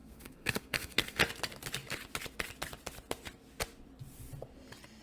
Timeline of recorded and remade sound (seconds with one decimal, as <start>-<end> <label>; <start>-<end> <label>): 0.0-1.2 remade; 1.2-5.0 recorded